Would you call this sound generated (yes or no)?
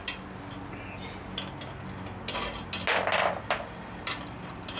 no